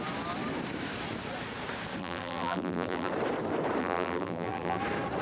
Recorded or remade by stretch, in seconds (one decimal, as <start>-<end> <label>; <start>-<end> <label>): 0.0-2.0 recorded; 2.0-3.1 remade; 3.1-3.8 recorded; 3.8-4.8 remade; 4.8-5.2 recorded